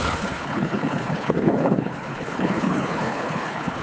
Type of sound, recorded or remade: remade